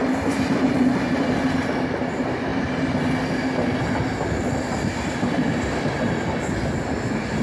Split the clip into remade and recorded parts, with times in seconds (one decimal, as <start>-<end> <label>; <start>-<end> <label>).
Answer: 0.0-7.4 recorded